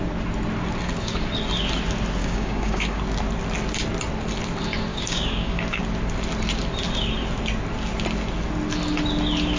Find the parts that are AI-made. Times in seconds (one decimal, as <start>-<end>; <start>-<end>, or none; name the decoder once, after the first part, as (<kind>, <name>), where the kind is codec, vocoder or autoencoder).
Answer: 2.2-3.0 (codec, DAC); 4.9-5.8

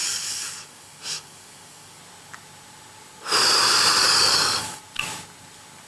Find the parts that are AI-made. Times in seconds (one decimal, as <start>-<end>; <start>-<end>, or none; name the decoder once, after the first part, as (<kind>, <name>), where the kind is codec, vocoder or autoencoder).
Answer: 0.0-2.0 (codec, DAC); 4.0-4.8

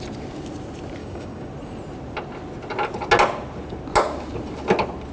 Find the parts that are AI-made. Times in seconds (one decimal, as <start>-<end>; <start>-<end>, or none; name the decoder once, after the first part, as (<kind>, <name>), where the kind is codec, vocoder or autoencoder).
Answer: 1.0-1.5 (codec, DAC)

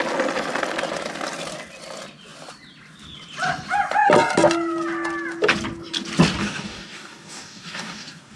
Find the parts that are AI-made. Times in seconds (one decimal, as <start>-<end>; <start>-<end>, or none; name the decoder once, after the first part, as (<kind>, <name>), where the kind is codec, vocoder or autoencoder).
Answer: 6.4-8.4 (codec, DAC)

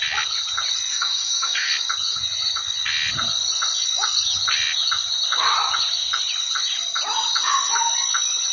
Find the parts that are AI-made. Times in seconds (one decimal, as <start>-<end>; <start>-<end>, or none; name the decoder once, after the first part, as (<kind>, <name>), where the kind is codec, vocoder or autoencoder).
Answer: 0.9-1.7 (codec, DAC)

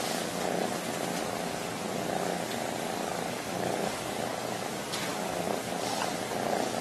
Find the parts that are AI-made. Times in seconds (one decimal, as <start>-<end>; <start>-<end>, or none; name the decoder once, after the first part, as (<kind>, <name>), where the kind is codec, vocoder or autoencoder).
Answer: 1.1-4.6 (codec, DAC); 5.1-5.9